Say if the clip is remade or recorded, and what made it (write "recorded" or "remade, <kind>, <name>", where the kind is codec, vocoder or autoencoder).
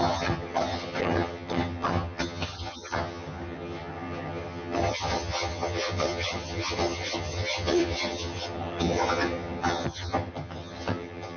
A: remade, vocoder, HiFi-GAN